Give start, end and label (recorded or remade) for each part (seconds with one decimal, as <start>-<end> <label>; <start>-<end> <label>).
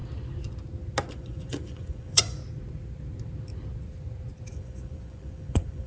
0.0-1.1 recorded; 1.1-2.4 remade; 2.4-4.5 recorded; 4.5-5.9 remade